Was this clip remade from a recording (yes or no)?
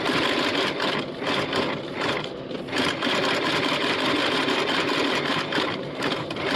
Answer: no